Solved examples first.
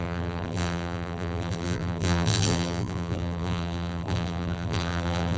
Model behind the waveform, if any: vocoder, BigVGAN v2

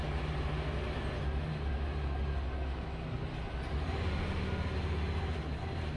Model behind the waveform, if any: none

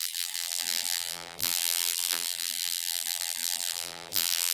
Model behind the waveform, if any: vocoder, BigVGAN v2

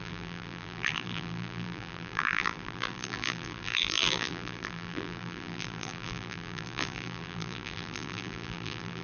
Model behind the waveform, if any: vocoder, BigVGAN v2